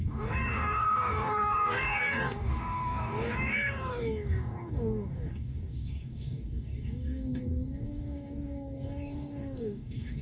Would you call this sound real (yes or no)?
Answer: no